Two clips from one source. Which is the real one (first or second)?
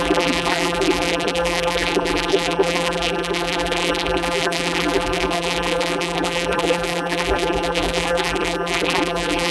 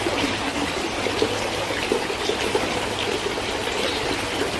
second